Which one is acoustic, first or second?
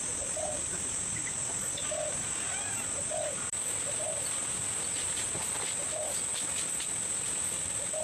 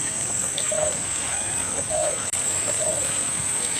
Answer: first